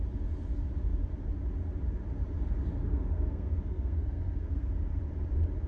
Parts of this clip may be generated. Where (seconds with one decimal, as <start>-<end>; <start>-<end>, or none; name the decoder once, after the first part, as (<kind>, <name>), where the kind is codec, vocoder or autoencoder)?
2.9-5.0 (codec, SNAC)